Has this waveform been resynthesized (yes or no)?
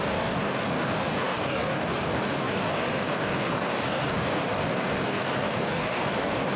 yes